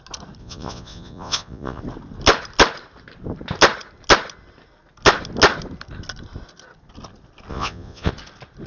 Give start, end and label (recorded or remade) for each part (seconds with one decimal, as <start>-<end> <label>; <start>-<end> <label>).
0.0-0.4 recorded; 0.4-1.8 remade; 1.8-7.5 recorded; 7.5-8.1 remade; 8.1-8.7 recorded